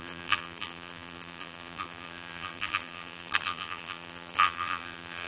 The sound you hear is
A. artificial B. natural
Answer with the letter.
A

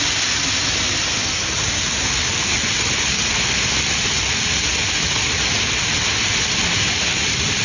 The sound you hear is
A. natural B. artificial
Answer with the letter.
A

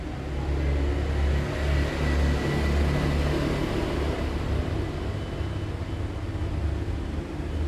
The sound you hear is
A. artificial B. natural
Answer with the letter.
B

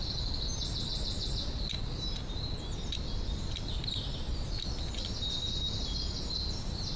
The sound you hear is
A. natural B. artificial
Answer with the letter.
A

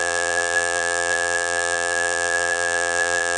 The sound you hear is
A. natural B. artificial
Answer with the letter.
B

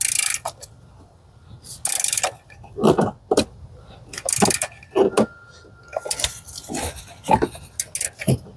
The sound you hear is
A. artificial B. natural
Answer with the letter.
B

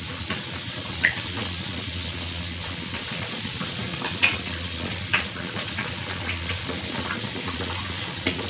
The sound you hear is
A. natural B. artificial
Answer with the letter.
B